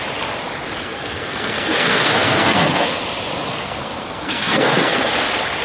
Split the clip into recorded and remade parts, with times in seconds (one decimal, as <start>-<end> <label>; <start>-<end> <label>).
0.0-0.8 recorded; 0.8-3.0 remade; 3.0-3.5 recorded; 3.5-5.1 remade; 5.1-5.6 recorded